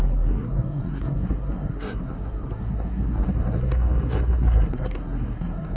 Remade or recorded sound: remade